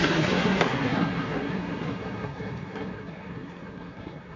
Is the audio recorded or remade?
remade